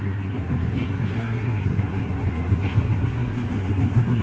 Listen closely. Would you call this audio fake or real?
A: fake